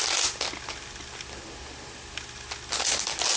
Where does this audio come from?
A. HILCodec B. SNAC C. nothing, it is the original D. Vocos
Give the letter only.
C